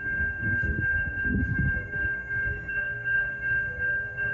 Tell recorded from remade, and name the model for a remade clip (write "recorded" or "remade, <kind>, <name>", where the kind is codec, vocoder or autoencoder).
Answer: remade, codec, SNAC